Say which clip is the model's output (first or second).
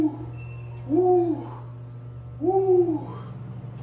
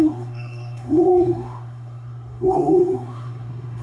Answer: second